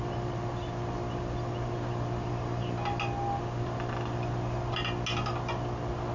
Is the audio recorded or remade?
recorded